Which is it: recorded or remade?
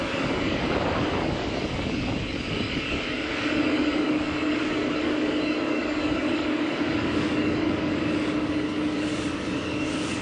remade